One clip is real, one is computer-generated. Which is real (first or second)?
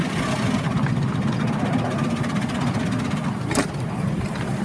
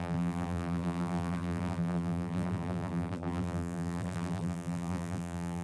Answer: first